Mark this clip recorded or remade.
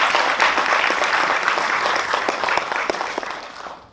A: recorded